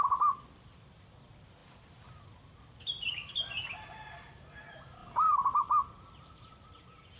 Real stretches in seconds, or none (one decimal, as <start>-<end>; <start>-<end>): 0.0-7.2